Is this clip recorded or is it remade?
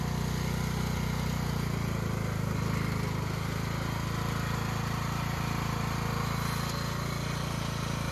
recorded